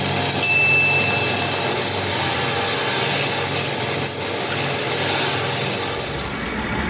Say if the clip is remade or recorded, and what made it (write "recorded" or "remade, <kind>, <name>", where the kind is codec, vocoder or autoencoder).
recorded